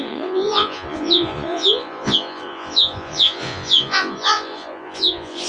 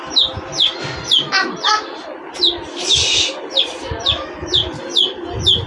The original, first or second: second